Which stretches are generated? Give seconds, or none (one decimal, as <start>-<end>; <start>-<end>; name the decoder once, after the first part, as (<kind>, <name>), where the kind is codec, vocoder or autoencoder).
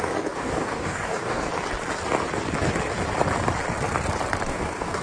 0.0-1.5 (codec, DAC); 4.5-5.0